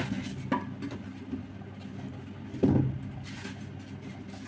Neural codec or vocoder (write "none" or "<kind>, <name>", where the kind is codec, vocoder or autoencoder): none